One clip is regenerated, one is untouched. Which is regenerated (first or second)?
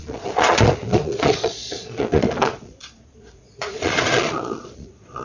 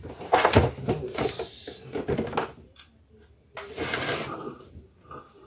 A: first